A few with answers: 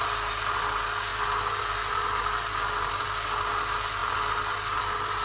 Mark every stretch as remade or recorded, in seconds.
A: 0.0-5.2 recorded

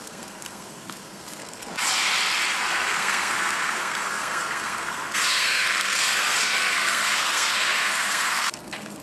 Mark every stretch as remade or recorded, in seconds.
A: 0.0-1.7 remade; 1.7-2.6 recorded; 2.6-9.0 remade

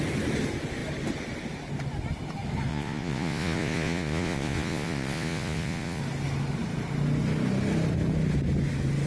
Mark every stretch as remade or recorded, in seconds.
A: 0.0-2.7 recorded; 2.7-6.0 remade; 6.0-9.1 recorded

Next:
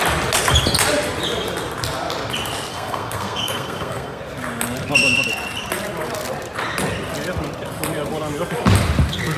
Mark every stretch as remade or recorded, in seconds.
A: 0.0-2.7 recorded; 2.7-4.2 remade; 4.2-9.4 recorded

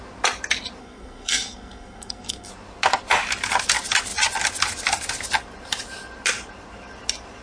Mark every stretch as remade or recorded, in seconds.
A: 0.0-0.8 recorded; 0.8-2.5 remade; 2.5-7.4 recorded

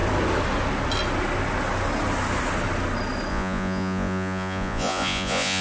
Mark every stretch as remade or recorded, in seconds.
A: 0.0-3.3 recorded; 3.3-5.6 remade